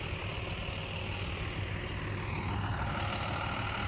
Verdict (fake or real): real